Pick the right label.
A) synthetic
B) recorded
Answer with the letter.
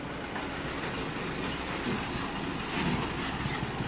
B